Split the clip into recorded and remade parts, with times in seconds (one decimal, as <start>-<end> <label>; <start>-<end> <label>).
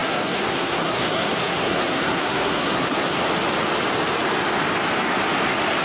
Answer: 0.0-3.2 remade; 3.2-5.8 recorded